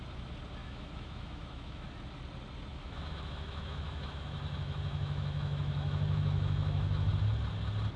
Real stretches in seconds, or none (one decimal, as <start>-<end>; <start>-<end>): 0.0-0.6; 1.9-2.7; 7.1-8.0